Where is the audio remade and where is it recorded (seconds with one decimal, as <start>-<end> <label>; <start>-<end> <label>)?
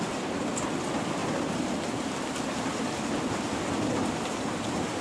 0.0-5.0 recorded